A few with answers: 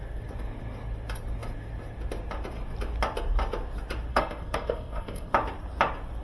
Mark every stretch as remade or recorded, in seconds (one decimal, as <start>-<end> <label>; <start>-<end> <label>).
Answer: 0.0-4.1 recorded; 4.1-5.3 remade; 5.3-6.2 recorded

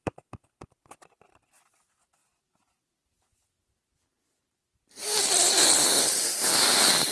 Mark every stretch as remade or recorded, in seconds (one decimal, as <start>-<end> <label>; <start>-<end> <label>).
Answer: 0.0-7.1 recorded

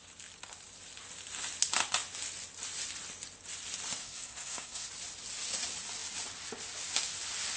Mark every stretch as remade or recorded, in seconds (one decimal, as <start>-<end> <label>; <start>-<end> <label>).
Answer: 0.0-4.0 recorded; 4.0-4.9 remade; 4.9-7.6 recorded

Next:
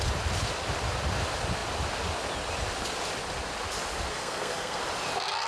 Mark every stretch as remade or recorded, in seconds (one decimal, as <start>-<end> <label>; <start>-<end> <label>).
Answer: 0.0-4.1 recorded; 4.1-4.8 remade; 4.8-5.5 recorded

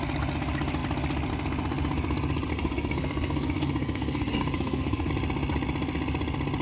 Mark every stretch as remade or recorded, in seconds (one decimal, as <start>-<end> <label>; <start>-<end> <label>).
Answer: 0.0-2.5 recorded; 2.5-5.1 remade; 5.1-6.6 recorded

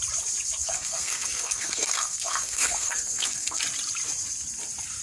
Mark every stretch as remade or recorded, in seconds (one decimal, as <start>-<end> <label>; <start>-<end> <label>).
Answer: 0.0-0.6 recorded; 0.6-3.6 remade; 3.6-5.0 recorded